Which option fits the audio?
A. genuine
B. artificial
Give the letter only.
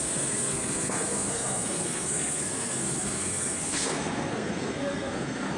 B